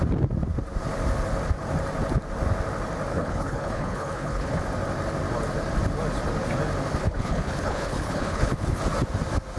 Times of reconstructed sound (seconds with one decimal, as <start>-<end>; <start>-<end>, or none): 3.1-4.6; 7.0-8.8